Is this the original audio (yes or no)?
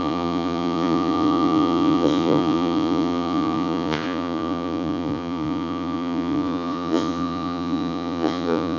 no